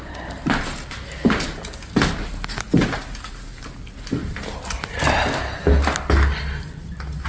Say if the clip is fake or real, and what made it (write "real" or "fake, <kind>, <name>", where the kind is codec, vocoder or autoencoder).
real